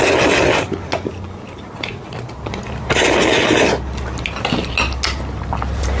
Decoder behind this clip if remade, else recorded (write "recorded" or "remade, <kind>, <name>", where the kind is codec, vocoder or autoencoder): recorded